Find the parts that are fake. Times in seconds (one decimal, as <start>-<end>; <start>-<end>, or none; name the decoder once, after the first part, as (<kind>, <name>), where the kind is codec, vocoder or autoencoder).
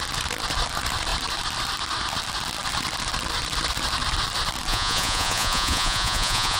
4.7-6.6 (vocoder, Vocos)